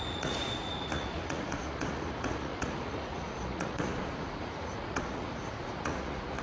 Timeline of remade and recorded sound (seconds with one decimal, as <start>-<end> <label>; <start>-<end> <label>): 0.0-6.4 remade